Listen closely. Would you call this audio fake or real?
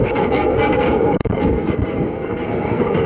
fake